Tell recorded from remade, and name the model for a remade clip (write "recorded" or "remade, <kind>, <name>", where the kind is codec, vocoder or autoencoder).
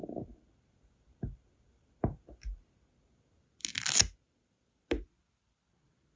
recorded